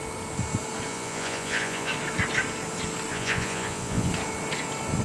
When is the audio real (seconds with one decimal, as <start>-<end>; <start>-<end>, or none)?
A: 0.0-0.9; 1.9-3.1; 4.1-5.0